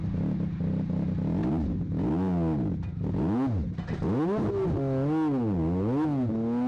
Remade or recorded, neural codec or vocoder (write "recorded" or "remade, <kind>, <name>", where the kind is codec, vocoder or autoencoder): recorded